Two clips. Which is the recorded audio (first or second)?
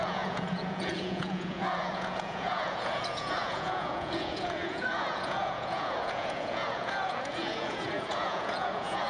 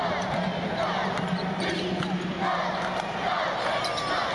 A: second